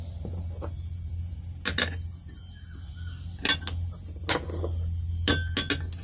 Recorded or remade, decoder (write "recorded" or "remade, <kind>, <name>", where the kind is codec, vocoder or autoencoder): recorded